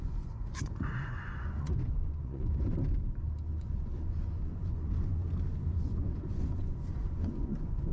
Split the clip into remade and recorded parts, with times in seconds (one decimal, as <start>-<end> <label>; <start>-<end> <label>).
0.0-2.7 remade; 2.7-3.6 recorded; 3.6-5.2 remade; 5.2-5.8 recorded; 5.8-7.9 remade